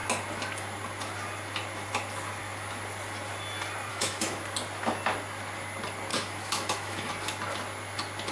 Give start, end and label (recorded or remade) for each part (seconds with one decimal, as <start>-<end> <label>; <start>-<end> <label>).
0.0-3.9 recorded; 3.9-4.4 remade; 4.4-6.1 recorded; 6.1-7.1 remade; 7.1-8.3 recorded